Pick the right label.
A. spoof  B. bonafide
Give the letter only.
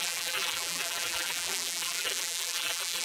A